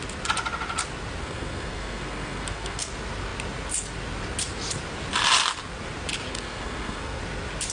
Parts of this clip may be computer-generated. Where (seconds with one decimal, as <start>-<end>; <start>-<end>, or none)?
1.2-2.9; 6.3-7.2